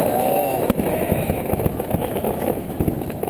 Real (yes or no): no